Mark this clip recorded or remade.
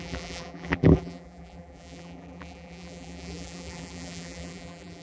remade